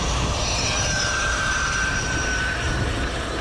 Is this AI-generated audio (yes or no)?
yes